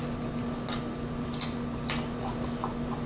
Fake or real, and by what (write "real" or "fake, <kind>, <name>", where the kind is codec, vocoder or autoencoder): real